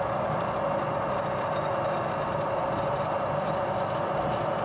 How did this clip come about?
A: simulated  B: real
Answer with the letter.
B